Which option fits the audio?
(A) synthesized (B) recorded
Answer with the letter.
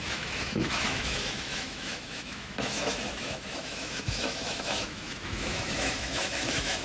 A